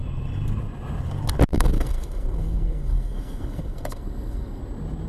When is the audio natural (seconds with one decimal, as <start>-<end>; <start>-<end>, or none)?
0.0-1.5; 4.6-5.1